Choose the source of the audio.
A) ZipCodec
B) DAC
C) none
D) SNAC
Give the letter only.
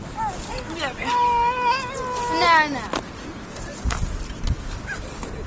C